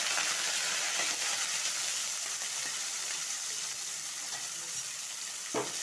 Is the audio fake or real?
real